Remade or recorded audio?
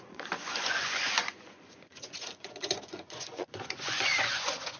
remade